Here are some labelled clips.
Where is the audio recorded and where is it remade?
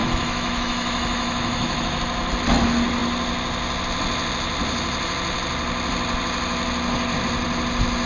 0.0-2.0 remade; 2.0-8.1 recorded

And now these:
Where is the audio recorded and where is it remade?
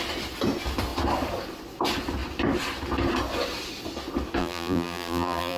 0.0-4.4 recorded; 4.4-5.6 remade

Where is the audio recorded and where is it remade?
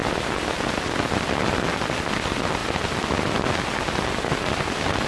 0.0-5.1 recorded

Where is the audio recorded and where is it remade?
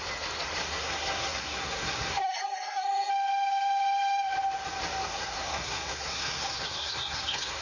0.0-0.6 recorded; 0.6-3.1 remade; 3.1-5.1 recorded; 5.1-7.6 remade